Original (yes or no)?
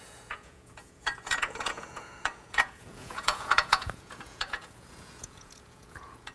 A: no